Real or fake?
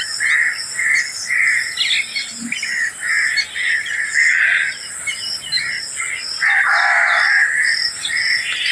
real